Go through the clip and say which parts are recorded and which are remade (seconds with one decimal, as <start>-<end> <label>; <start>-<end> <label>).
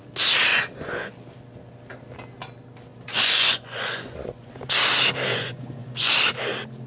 0.0-0.5 recorded; 0.5-1.1 remade; 1.1-2.9 recorded; 2.9-4.5 remade; 4.5-5.3 recorded; 5.3-6.1 remade; 6.1-6.9 recorded